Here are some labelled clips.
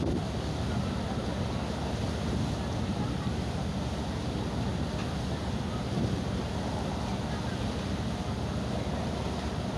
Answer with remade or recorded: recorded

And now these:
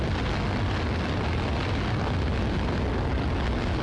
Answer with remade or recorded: recorded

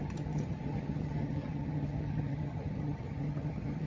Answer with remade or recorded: remade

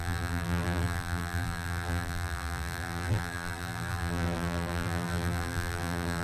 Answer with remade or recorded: remade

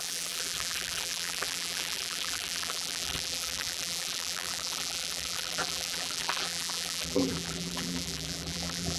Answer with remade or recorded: remade